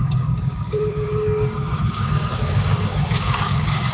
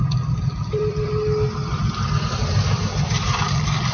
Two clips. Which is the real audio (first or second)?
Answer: second